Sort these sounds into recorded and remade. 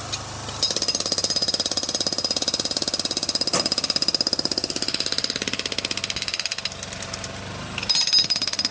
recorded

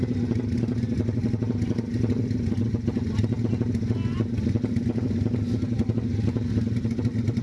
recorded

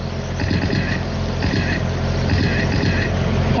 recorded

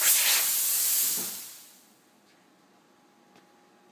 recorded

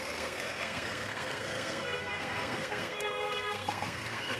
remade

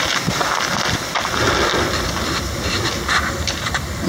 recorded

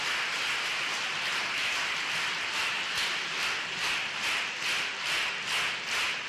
recorded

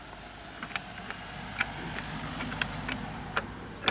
recorded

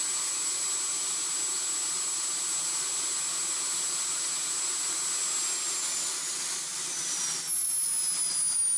recorded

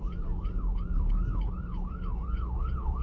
recorded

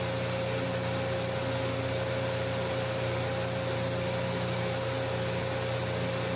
recorded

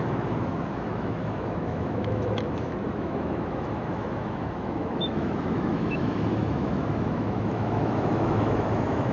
remade